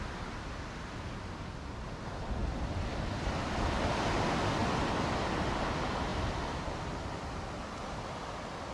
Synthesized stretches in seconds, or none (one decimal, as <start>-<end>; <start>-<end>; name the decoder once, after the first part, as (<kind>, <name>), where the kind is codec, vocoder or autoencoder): 2.4-3.1 (vocoder, BigVGAN v2); 6.1-7.3